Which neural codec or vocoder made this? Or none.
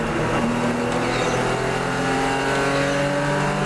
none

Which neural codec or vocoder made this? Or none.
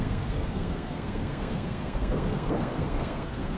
codec, SNAC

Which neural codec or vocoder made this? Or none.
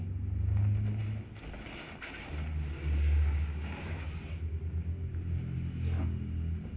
none